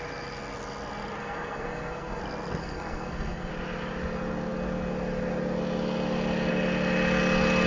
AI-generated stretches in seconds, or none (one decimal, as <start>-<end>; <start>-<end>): 1.2-2.2; 2.6-3.5